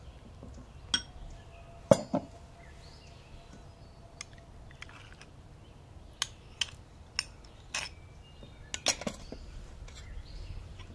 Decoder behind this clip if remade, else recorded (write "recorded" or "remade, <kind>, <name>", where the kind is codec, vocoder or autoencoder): recorded